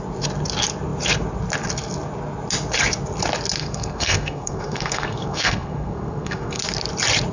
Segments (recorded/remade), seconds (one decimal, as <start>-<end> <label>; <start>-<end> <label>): 0.0-3.6 recorded; 3.6-6.6 remade; 6.6-7.3 recorded